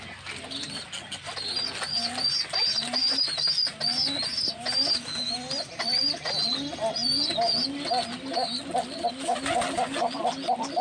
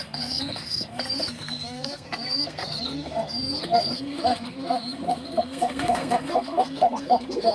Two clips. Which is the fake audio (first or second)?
second